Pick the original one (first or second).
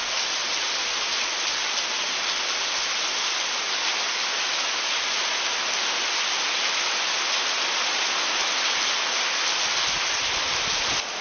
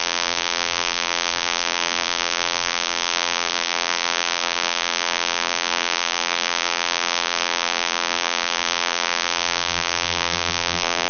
first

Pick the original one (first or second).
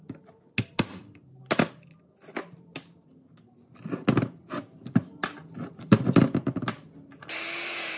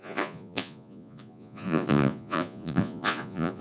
first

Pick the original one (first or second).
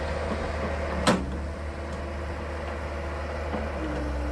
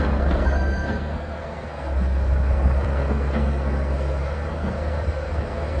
first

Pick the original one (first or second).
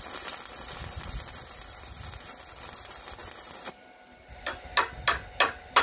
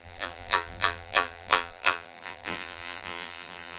first